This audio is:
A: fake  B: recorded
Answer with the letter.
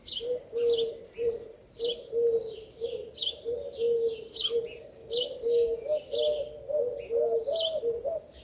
B